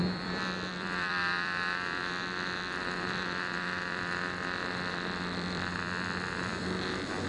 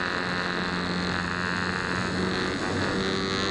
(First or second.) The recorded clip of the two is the second